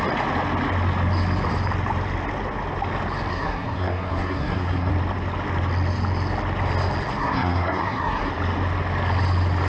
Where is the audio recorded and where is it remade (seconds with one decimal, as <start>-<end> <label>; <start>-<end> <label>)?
0.0-3.3 recorded; 3.3-4.9 remade; 4.9-7.2 recorded; 7.2-8.3 remade; 8.3-9.7 recorded